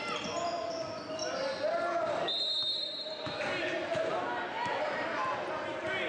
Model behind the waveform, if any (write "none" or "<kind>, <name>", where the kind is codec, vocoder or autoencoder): none